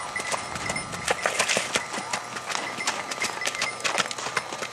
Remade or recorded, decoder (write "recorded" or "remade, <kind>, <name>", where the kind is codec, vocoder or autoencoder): recorded